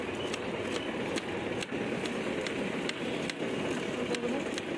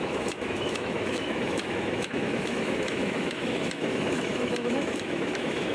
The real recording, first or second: first